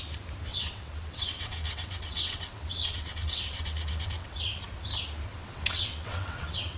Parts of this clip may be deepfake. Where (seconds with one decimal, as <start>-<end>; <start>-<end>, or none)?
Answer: 0.5-4.4; 5.3-6.8